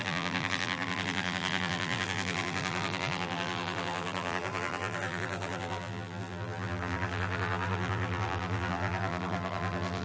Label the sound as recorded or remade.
remade